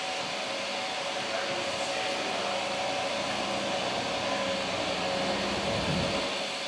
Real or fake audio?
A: real